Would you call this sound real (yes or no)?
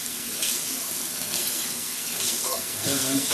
no